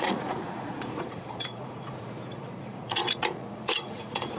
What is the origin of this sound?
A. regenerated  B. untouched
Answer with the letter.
A